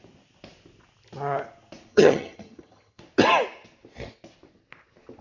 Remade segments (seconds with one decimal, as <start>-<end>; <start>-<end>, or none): 1.9-3.0